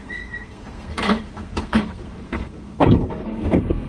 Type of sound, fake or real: fake